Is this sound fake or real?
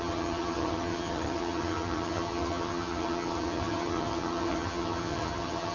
fake